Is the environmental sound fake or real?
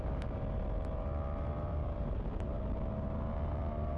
fake